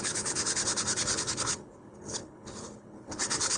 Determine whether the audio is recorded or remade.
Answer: remade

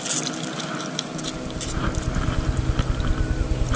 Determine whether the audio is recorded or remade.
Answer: recorded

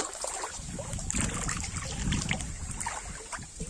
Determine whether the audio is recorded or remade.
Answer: recorded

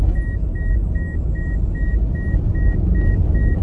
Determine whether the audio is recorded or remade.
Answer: recorded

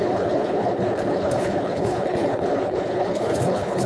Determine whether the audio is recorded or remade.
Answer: remade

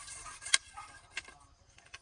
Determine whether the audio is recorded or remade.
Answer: recorded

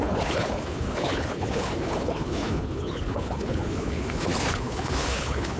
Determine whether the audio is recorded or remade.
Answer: remade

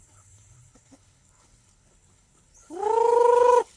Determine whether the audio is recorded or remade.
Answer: remade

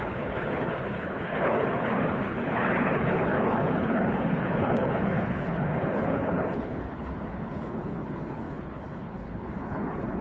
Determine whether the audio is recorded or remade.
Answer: remade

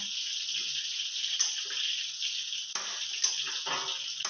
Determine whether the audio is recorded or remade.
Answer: recorded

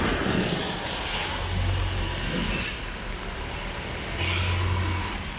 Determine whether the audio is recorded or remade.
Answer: recorded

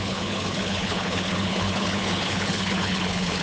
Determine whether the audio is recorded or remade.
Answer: remade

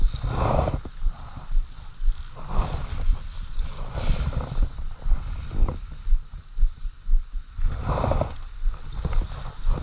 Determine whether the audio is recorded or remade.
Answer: recorded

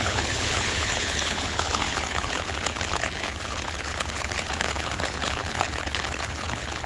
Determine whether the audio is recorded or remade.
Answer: remade